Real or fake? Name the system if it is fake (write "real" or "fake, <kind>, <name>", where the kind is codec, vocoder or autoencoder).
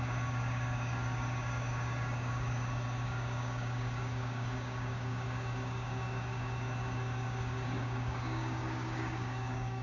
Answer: fake, codec, DAC